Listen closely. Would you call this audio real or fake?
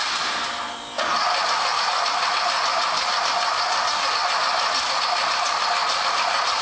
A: real